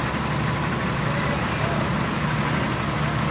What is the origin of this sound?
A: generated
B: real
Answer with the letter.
B